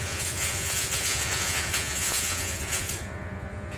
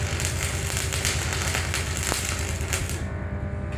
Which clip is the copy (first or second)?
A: first